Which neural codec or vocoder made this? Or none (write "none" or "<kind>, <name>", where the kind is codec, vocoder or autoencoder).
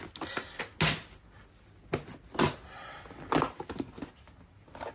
none